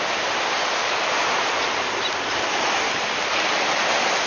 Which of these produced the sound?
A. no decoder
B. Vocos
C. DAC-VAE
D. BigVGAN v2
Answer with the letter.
D